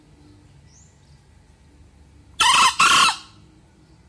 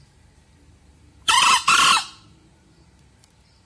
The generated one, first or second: second